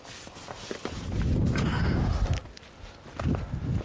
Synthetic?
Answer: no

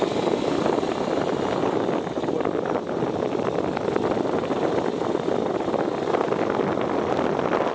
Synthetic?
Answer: no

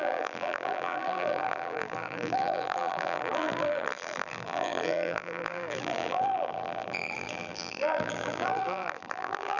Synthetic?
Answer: yes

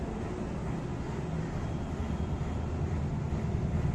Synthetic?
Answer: no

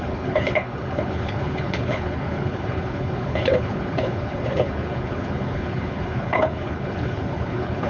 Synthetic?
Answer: yes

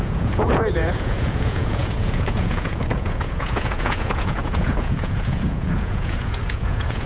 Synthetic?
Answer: yes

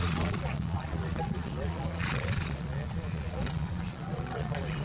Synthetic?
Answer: yes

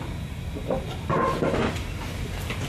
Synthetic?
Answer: no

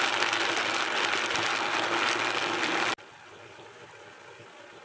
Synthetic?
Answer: no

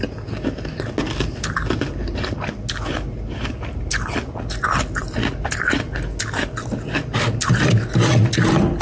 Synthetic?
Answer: no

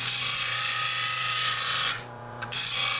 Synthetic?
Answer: yes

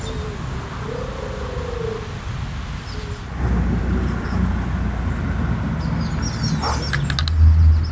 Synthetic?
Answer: no